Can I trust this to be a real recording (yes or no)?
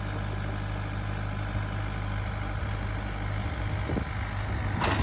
yes